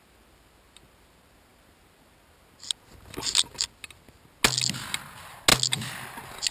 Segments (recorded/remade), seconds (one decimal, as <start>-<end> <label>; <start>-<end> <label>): 0.0-6.5 recorded

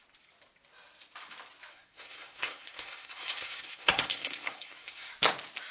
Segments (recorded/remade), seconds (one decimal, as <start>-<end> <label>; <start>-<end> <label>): 0.0-1.7 recorded; 1.7-5.1 remade; 5.1-5.7 recorded

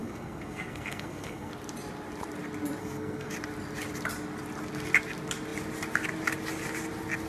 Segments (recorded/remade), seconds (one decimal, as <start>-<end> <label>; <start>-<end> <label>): 0.0-1.5 remade; 1.5-2.8 recorded; 2.8-3.3 remade; 3.3-7.3 recorded